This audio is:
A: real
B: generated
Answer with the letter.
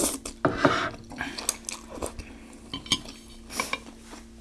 A